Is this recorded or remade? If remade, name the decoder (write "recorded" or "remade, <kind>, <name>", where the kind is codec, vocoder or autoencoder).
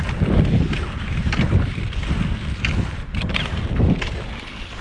recorded